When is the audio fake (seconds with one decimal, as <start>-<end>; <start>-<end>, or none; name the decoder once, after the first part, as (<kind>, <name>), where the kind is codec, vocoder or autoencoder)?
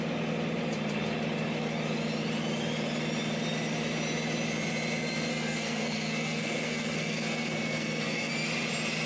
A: 5.3-8.3 (codec, SNAC)